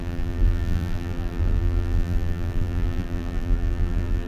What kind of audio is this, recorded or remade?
remade